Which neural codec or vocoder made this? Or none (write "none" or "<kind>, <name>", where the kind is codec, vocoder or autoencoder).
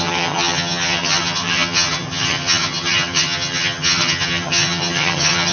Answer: vocoder, HiFi-GAN